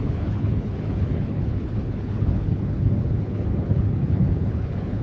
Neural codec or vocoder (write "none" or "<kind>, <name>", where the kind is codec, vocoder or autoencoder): codec, HILCodec